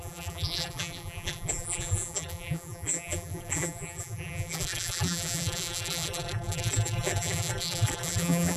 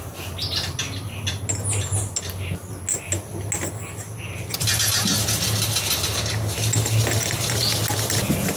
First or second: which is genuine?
second